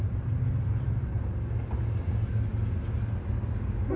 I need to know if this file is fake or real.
real